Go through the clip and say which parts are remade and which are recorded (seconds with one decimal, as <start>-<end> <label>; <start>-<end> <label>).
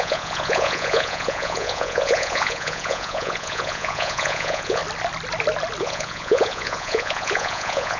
0.0-4.8 remade; 4.8-5.8 recorded; 5.8-8.0 remade